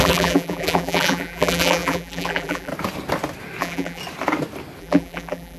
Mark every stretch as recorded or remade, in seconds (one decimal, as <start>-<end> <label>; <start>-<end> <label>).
0.0-2.7 remade; 2.7-3.6 recorded; 3.6-4.0 remade; 4.0-4.8 recorded; 4.8-5.6 remade